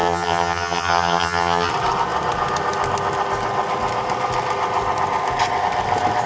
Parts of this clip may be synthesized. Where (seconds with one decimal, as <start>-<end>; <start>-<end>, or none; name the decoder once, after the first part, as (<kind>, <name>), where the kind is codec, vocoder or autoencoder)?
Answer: 0.0-1.7 (vocoder, HiFi-GAN)

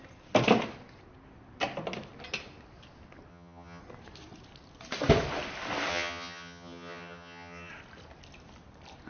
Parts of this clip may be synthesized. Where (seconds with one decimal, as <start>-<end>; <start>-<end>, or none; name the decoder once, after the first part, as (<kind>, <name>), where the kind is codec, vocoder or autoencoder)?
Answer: 3.3-3.8 (vocoder, HiFi-GAN); 5.9-7.7

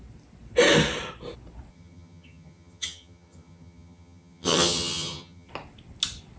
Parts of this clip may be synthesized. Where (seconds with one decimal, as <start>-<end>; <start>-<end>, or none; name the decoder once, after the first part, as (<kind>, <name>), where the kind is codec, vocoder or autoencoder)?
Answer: 1.7-5.5 (vocoder, HiFi-GAN)